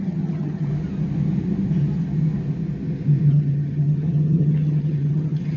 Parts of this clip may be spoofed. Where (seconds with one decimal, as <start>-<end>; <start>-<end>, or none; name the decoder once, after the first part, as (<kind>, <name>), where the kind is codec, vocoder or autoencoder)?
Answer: 0.0-0.7 (vocoder, HiFi-GAN); 3.3-5.6